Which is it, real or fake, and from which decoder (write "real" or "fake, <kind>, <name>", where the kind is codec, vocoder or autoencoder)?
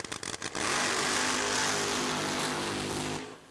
real